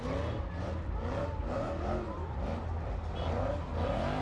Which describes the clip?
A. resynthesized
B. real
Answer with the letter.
B